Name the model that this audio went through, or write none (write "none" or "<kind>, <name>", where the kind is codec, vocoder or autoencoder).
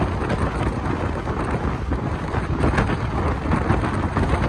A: none